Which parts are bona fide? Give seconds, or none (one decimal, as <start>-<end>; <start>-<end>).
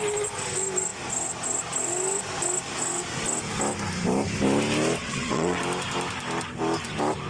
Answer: 0.0-5.0; 5.6-7.3